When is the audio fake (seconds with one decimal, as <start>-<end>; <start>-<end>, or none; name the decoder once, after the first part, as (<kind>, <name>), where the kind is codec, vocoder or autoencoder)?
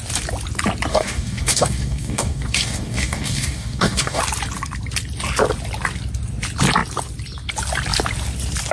0.9-4.2 (codec, DAC)